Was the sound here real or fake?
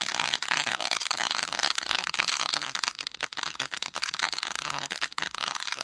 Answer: fake